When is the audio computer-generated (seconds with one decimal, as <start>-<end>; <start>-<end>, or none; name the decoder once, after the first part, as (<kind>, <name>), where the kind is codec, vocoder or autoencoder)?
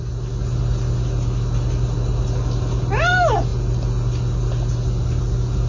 none